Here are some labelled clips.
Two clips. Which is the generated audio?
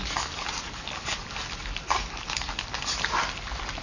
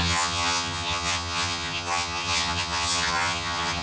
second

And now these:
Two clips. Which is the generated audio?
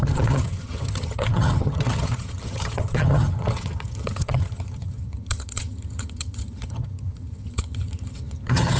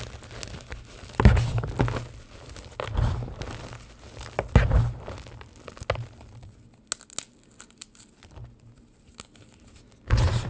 first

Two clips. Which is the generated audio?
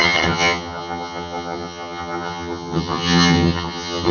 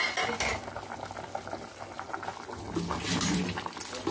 first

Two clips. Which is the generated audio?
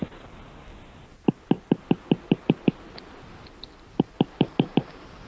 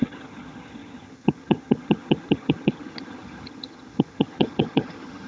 second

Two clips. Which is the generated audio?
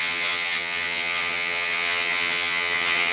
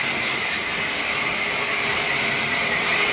first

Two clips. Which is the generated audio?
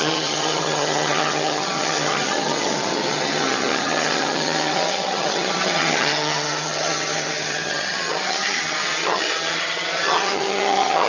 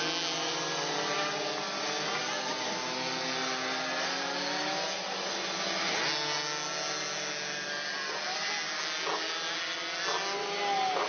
first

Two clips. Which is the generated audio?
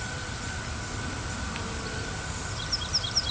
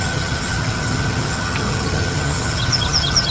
second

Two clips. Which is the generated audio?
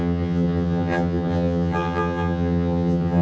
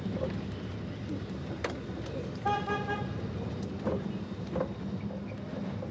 first